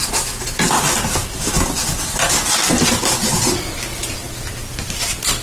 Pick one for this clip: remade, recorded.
recorded